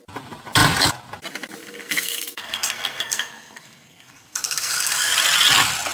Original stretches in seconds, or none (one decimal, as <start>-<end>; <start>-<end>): 0.0-1.6; 5.1-5.9